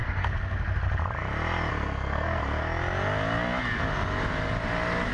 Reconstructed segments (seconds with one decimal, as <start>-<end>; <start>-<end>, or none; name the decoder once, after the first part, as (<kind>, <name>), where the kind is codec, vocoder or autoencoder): 0.0-0.8 (codec, SNAC); 1.7-2.4